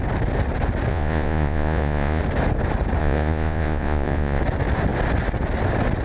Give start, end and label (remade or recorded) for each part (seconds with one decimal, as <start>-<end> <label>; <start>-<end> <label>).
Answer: 0.0-0.9 recorded; 0.9-2.2 remade; 2.2-3.0 recorded; 3.0-4.4 remade; 4.4-6.0 recorded